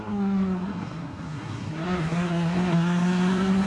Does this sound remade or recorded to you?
remade